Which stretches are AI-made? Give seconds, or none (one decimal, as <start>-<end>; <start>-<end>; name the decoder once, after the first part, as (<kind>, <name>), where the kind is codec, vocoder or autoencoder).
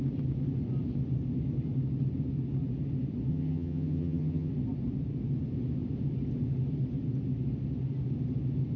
3.3-4.5 (vocoder, HiFi-GAN)